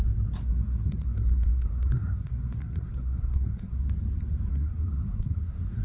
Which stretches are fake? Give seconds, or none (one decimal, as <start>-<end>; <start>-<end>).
0.4-3.9; 4.5-5.8